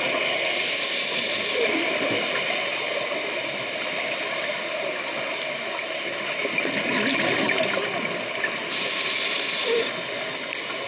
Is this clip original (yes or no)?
yes